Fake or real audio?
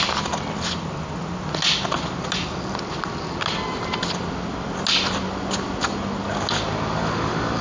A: real